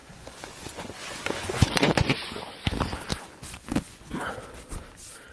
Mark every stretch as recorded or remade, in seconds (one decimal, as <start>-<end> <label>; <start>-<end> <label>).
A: 0.0-2.3 remade; 2.3-3.1 recorded; 3.1-4.3 remade; 4.3-5.3 recorded